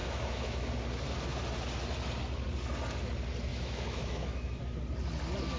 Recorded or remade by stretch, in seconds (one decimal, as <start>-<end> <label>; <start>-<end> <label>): 0.0-0.6 remade; 0.6-3.5 recorded; 3.5-4.6 remade; 4.6-5.6 recorded